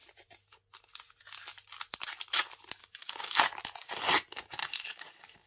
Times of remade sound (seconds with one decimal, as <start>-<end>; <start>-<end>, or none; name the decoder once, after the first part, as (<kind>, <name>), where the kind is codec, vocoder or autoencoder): 2.8-3.4 (codec, DAC); 4.6-5.5